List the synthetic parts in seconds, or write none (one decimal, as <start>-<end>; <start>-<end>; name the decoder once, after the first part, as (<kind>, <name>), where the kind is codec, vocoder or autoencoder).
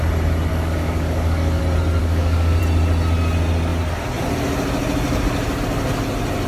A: 0.5-1.6 (codec, DAC); 2.0-2.6